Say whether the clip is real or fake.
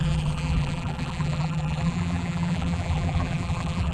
fake